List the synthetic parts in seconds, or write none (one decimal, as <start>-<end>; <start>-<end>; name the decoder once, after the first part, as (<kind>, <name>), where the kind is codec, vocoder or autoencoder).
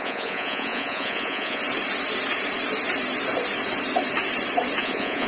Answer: 0.0-1.6 (vocoder, Vocos); 4.8-5.3